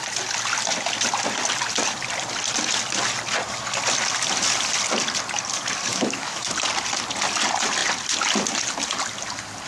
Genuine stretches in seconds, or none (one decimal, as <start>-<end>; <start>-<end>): 0.0-5.9; 6.5-9.7